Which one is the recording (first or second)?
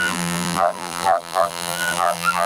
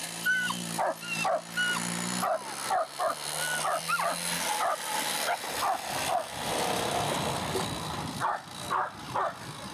second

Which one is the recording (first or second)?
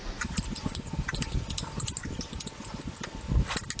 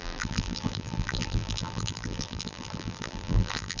first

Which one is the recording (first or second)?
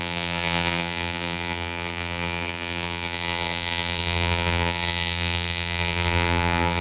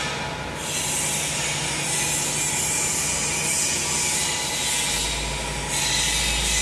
second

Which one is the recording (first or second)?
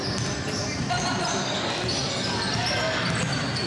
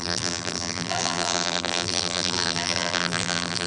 first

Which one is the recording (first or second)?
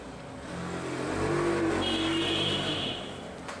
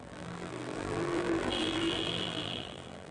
first